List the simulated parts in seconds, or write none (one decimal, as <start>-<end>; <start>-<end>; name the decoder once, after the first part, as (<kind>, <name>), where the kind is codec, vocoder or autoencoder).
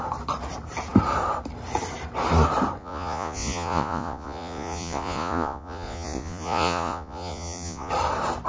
2.8-7.9 (vocoder, Vocos)